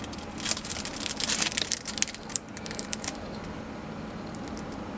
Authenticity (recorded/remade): recorded